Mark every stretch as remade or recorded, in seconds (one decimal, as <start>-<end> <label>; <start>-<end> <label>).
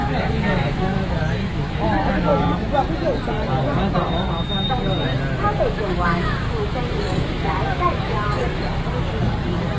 0.0-2.3 remade; 2.3-5.6 recorded; 5.6-8.4 remade; 8.4-9.8 recorded